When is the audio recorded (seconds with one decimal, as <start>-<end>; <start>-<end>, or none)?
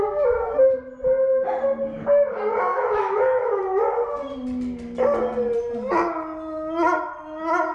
0.0-2.7; 3.6-7.7